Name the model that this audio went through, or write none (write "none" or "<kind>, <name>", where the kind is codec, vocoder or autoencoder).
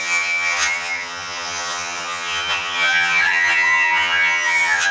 vocoder, HiFi-GAN